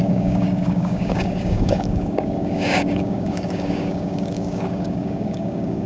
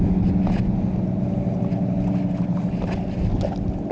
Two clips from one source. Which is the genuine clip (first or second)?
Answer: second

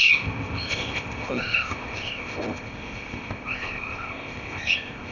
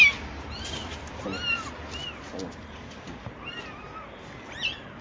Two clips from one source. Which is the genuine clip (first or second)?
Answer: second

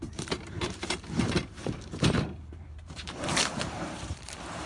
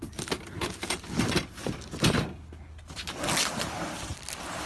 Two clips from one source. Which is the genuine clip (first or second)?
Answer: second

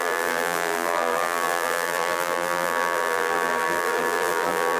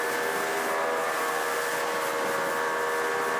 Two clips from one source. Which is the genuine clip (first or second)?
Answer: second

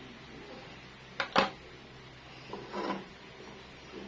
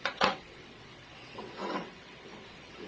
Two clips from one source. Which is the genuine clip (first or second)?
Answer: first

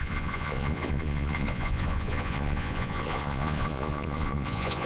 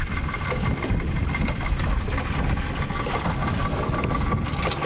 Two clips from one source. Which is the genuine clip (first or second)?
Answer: second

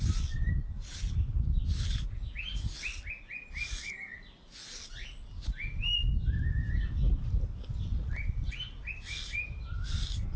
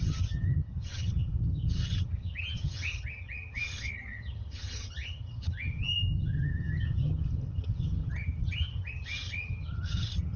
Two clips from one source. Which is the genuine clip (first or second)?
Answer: first